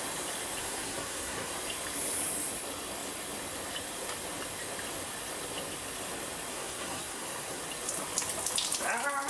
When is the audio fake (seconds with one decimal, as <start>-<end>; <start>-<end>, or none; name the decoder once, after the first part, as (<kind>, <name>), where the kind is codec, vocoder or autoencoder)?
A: 0.6-1.5 (codec, SNAC); 6.5-7.6

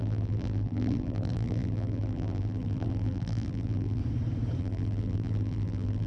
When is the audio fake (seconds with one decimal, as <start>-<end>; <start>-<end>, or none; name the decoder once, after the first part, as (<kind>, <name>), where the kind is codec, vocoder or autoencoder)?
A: 0.0-4.0 (vocoder, BigVGAN v2); 4.6-6.1